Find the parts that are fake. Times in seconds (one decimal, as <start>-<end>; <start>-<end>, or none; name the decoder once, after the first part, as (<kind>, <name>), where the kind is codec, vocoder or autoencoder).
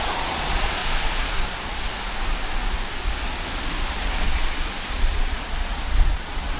0.0-0.8 (vocoder, Vocos); 3.9-6.6